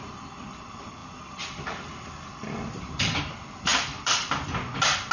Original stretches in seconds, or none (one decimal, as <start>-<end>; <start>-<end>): 0.0-1.0; 3.2-3.7; 4.5-5.1